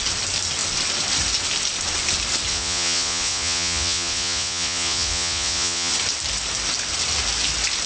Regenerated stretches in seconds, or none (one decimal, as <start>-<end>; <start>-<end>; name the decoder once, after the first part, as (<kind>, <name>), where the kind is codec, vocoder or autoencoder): 2.5-5.9 (vocoder, Vocos)